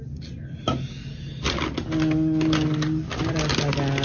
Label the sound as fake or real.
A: real